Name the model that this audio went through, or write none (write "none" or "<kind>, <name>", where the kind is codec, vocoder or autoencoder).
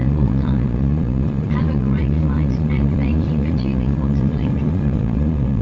vocoder, Vocos